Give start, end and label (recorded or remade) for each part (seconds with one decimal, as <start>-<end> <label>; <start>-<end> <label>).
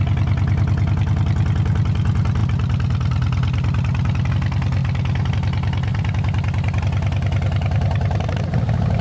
0.0-5.9 recorded; 5.9-6.8 remade; 6.8-9.0 recorded